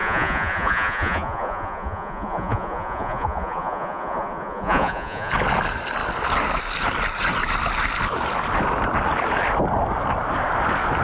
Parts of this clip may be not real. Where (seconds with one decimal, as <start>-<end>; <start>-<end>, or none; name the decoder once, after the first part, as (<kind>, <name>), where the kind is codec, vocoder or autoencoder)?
0.0-5.3 (vocoder, Vocos)